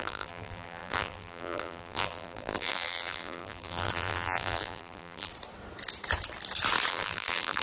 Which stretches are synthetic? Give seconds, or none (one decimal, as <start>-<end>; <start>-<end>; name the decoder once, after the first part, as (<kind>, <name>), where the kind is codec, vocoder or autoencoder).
0.0-5.3 (vocoder, BigVGAN v2); 6.9-7.6